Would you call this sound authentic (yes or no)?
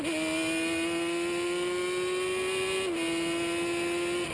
yes